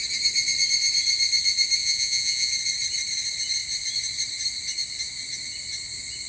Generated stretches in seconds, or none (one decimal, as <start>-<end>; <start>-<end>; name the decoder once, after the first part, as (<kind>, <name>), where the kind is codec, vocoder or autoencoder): 1.8-2.5 (vocoder, Vocos)